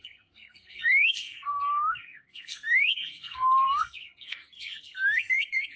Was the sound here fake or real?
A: fake